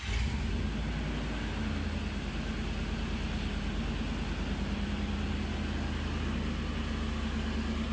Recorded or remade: recorded